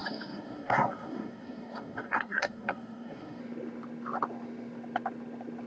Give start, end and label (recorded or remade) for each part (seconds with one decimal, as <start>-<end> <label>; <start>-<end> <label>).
0.0-3.4 remade; 3.4-5.7 recorded